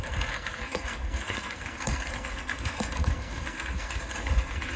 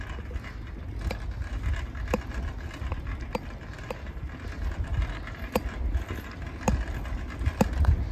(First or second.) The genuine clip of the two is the second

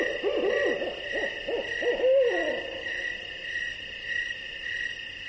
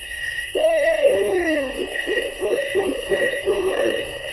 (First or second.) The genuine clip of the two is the first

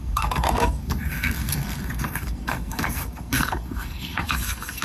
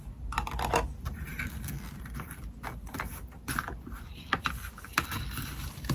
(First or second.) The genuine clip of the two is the second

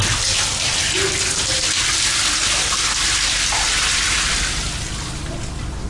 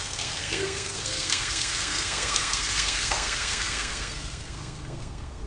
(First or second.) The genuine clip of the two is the first